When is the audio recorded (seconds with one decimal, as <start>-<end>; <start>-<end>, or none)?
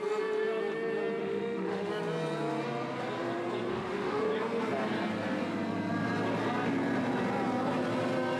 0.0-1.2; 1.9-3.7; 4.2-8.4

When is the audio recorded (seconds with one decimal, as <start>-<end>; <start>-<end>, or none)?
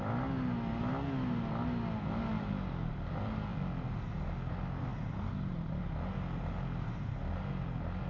0.0-8.1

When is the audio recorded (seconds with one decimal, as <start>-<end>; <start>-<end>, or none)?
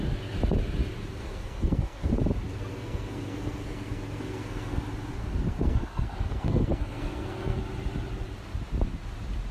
0.0-1.2; 2.1-2.5; 4.8-5.2; 7.6-9.5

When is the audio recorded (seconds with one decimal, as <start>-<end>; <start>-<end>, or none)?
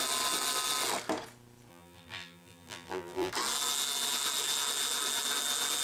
0.0-1.7; 3.3-5.8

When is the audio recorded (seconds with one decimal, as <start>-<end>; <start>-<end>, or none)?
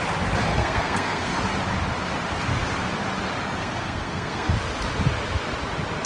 0.0-0.5; 1.4-3.6; 4.5-6.1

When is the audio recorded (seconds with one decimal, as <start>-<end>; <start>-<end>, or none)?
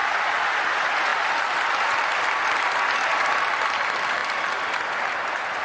0.0-5.6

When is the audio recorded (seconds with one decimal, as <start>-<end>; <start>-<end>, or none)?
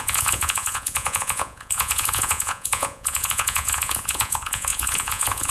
none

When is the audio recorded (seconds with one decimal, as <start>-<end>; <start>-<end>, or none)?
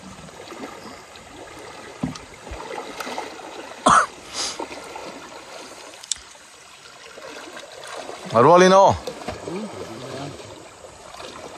0.0-9.1; 10.5-11.6